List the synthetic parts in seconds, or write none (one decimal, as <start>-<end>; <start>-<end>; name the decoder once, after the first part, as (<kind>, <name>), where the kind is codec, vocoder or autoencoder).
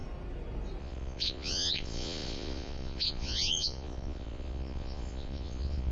0.8-5.9 (vocoder, Vocos)